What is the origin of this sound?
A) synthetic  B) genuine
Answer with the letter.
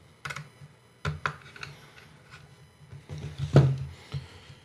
B